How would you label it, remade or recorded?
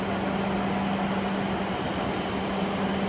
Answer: recorded